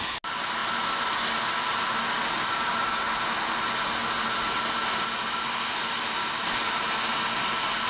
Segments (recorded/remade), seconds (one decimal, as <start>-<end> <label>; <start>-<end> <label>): 0.0-7.9 recorded